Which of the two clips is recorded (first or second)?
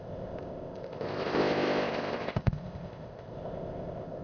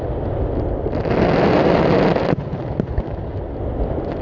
second